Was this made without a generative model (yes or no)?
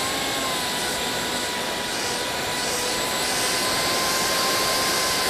yes